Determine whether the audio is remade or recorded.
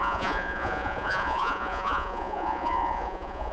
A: remade